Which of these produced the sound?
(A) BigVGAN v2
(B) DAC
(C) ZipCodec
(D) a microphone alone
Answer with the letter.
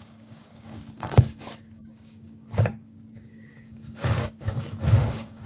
B